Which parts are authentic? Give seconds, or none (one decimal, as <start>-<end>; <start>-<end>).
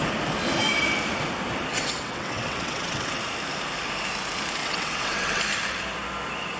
0.0-1.7; 3.1-4.6; 5.4-6.6